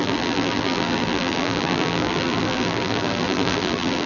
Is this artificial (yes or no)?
yes